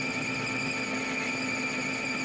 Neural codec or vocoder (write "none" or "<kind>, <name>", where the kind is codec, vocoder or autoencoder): none